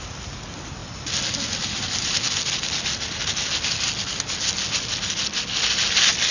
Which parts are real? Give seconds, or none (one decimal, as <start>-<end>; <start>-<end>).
0.0-6.3